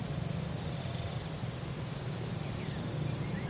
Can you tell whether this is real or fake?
real